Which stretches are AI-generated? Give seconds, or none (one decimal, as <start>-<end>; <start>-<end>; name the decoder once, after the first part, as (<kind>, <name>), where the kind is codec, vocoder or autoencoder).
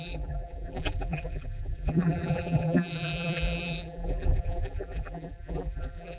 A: 0.0-6.2 (vocoder, BigVGAN v2)